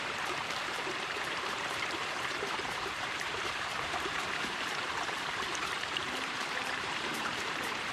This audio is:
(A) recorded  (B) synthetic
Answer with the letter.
B